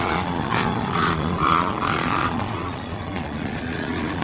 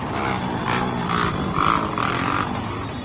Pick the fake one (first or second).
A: first